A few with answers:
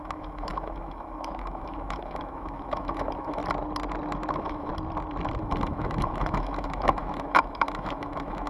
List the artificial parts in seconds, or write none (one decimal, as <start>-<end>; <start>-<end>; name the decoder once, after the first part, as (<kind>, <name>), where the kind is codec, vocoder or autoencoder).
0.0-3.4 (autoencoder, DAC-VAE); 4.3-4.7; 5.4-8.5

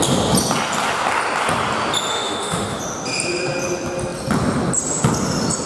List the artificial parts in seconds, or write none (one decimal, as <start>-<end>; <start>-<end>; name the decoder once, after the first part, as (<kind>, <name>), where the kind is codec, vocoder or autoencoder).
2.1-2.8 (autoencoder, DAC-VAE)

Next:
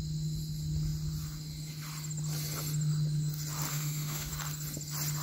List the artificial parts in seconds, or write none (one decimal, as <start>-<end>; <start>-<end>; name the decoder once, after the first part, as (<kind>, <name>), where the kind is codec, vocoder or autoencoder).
3.7-4.3 (autoencoder, DAC-VAE)

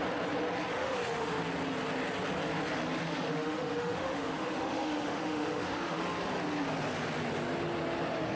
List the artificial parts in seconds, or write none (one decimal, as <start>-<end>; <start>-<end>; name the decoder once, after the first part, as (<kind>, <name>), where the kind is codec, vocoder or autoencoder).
0.7-1.4 (autoencoder, DAC-VAE); 3.0-6.0

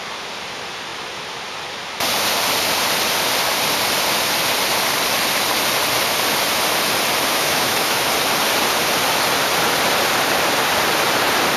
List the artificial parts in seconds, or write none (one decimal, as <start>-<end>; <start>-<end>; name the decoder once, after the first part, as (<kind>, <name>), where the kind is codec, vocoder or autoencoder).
7.3-8.1 (autoencoder, DAC-VAE)

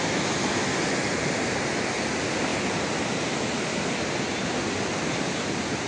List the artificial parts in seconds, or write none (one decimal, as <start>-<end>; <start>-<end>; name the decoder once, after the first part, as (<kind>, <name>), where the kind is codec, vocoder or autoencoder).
none